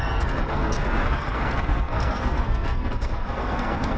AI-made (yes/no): yes